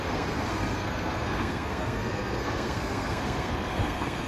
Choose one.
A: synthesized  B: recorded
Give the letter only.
A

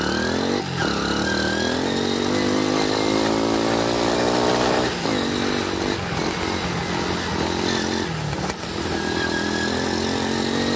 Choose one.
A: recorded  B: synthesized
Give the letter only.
A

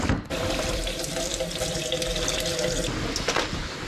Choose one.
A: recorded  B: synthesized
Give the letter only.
B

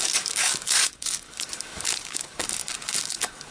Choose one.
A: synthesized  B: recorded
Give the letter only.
A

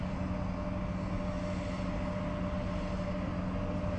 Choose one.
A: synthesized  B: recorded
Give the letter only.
B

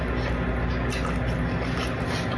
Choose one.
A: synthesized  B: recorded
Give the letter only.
B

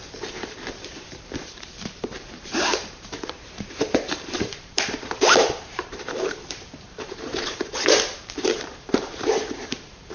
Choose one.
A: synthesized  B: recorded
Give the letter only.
A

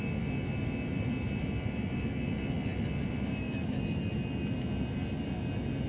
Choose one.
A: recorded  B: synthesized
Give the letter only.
A